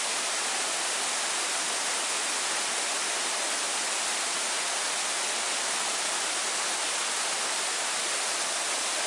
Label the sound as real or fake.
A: real